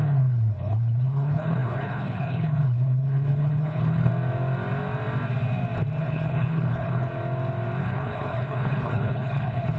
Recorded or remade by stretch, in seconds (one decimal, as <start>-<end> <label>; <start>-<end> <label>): 0.0-4.1 remade; 4.1-6.0 recorded; 6.0-7.1 remade; 7.1-7.8 recorded; 7.8-9.8 remade